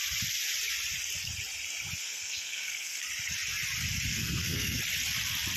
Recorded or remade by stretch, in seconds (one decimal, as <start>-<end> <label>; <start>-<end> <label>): 0.0-2.0 recorded; 2.0-3.0 remade; 3.0-4.1 recorded; 4.1-4.8 remade; 4.8-5.6 recorded